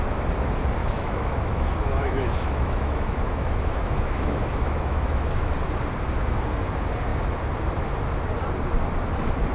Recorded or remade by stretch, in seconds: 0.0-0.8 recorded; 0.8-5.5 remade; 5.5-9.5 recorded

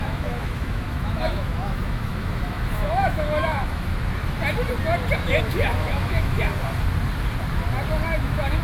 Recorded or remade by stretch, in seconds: 0.0-3.9 remade; 3.9-5.4 recorded; 5.4-6.5 remade; 6.5-8.2 recorded; 8.2-8.6 remade

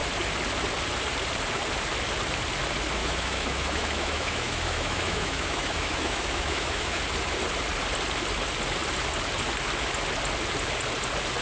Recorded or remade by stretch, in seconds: 0.0-3.0 recorded; 3.0-7.0 remade; 7.0-11.4 recorded

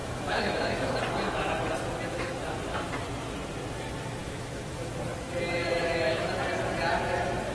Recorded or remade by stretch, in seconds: 0.0-1.0 remade; 1.0-4.2 recorded; 4.2-4.9 remade; 4.9-5.6 recorded; 5.6-6.3 remade; 6.3-7.5 recorded

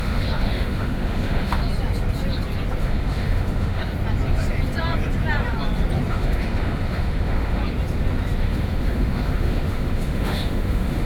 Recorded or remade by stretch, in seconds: 0.0-1.6 remade; 1.6-2.8 recorded; 2.8-3.8 remade; 3.8-6.1 recorded; 6.1-7.6 remade; 7.6-8.4 recorded; 8.4-11.1 remade

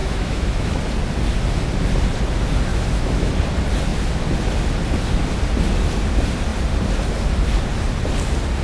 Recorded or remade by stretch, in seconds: 0.0-0.8 remade; 0.8-2.7 recorded; 2.7-3.3 remade; 3.3-8.6 recorded